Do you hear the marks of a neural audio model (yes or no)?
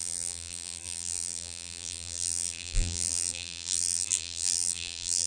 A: yes